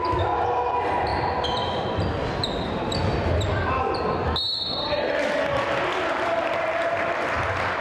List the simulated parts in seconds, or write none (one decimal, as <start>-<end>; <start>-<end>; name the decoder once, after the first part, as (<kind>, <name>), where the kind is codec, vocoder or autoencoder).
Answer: 1.1-3.5 (vocoder, BigVGAN v2); 5.9-6.6